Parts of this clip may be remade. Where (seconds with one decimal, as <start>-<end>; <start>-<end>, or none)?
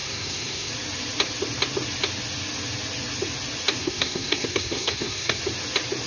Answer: 0.0-0.7; 3.8-5.4